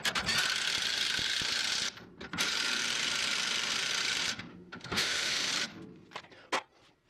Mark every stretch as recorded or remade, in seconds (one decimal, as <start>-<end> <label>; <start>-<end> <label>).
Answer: 0.0-4.5 recorded; 4.5-5.5 remade; 5.5-7.1 recorded